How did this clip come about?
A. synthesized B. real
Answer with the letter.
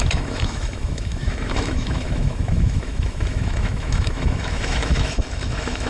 A